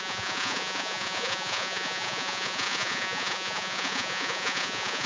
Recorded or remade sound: remade